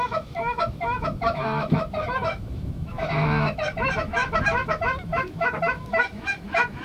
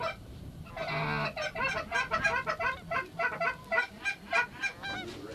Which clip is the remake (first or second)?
first